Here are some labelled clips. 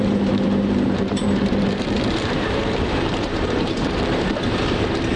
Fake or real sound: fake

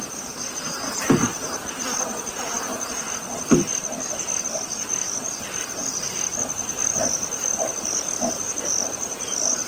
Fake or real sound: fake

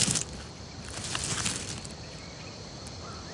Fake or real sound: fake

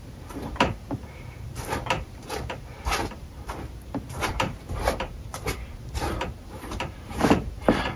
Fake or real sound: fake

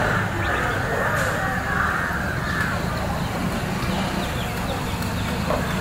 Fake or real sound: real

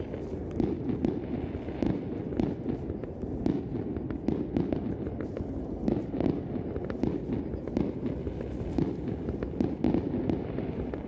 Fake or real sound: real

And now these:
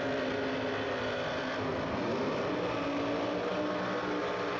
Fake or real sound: real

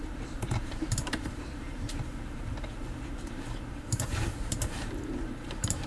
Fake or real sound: fake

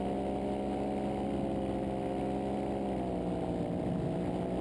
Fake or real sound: real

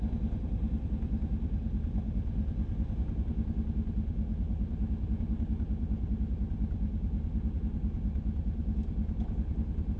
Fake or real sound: real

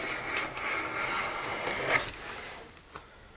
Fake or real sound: real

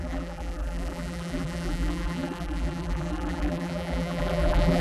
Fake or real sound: fake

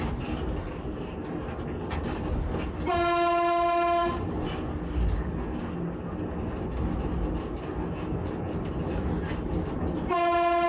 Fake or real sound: real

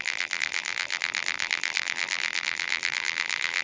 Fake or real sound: fake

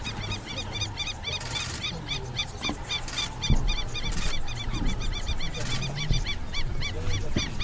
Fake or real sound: real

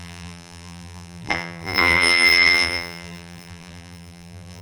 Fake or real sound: fake